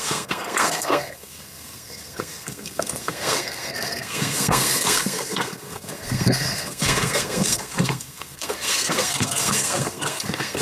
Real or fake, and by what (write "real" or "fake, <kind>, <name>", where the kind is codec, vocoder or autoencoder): fake, codec, SNAC